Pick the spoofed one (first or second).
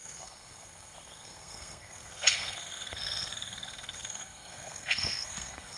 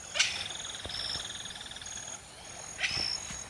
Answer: first